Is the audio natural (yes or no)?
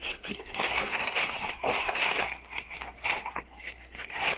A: no